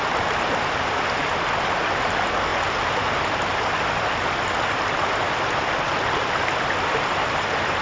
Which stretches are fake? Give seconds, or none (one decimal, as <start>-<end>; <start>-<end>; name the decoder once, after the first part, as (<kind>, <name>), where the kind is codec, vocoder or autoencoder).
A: none